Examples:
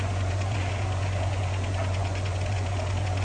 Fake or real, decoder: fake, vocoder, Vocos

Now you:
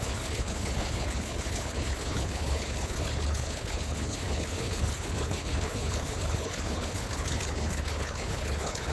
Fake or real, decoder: fake, codec, HILCodec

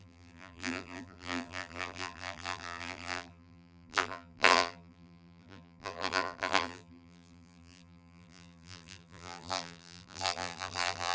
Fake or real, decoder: fake, vocoder, BigVGAN v2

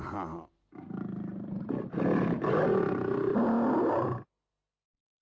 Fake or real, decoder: real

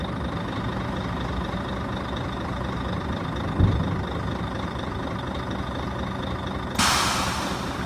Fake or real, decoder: real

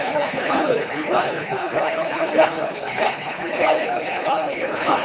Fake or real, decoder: fake, codec, HILCodec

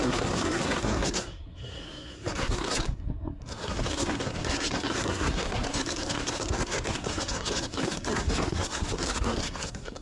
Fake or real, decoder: fake, codec, SNAC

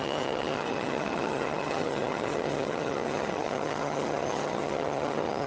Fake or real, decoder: fake, vocoder, HiFi-GAN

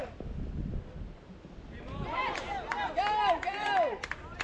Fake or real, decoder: real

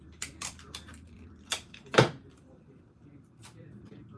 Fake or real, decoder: fake, vocoder, BigVGAN v2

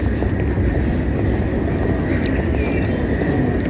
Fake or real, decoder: real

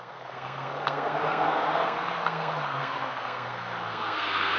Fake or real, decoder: fake, codec, SNAC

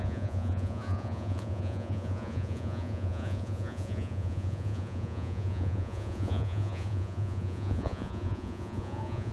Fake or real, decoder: fake, vocoder, Vocos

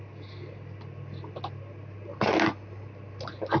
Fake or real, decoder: real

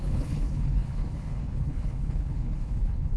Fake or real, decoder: fake, codec, HILCodec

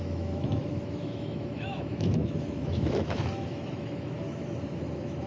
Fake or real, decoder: fake, autoencoder, DAC-VAE